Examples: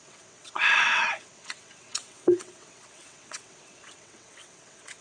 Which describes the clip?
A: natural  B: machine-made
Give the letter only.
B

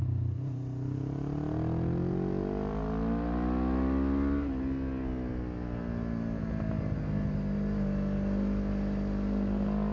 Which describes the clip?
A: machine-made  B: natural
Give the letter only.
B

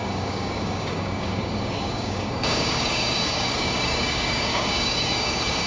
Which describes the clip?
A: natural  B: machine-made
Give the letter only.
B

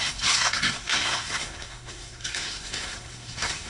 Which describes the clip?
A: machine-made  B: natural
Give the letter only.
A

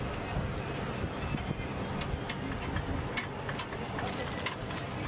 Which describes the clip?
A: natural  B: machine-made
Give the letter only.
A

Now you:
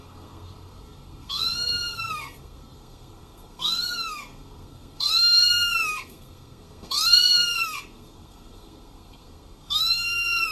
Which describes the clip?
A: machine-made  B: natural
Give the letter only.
A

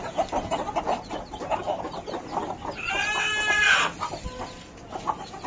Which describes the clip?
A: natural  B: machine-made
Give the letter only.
A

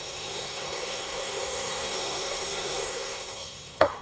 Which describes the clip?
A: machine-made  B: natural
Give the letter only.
A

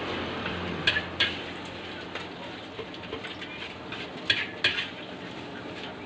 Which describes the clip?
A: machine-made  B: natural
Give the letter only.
B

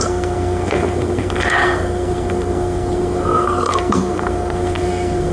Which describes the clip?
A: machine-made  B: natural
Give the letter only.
A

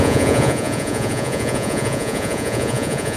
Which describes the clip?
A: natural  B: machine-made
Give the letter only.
B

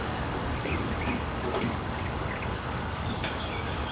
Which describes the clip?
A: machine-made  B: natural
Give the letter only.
A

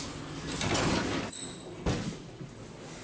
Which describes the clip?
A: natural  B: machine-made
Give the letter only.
A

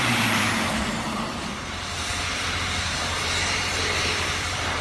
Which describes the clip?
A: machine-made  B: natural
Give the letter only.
A